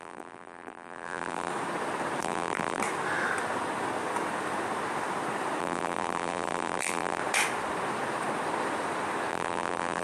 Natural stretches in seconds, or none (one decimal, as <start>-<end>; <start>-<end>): 1.5-2.2; 2.8-5.6; 7.2-9.3